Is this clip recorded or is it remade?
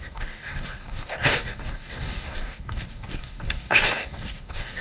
remade